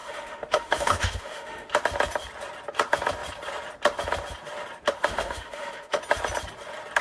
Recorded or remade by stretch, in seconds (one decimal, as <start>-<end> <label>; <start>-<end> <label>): 0.0-1.7 remade; 1.7-5.1 recorded; 5.1-6.0 remade; 6.0-7.0 recorded

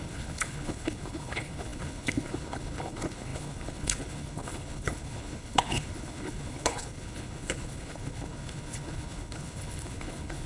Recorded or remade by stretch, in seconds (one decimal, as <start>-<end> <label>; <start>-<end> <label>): 0.0-10.5 remade

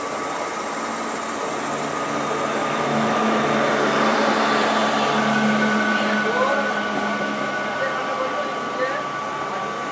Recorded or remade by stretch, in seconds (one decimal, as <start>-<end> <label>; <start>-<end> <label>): 0.0-2.6 recorded; 2.6-3.6 remade; 3.6-9.9 recorded